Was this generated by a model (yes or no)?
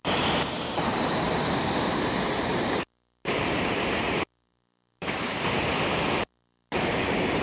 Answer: yes